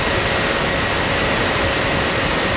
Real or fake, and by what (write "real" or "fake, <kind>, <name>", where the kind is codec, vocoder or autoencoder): real